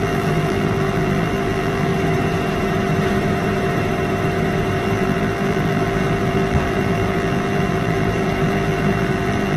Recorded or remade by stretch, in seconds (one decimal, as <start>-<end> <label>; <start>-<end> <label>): 0.0-1.9 remade; 1.9-4.8 recorded; 4.8-9.6 remade